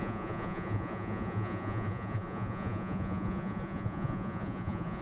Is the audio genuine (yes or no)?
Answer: no